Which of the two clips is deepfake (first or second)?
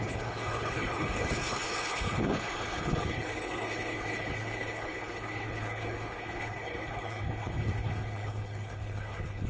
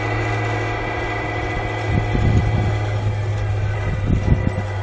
first